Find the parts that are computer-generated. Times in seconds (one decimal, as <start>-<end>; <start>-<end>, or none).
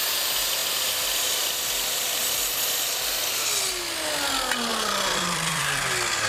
4.7-5.8